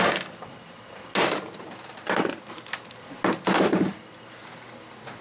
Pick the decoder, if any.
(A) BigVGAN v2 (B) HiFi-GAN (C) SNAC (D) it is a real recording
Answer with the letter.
D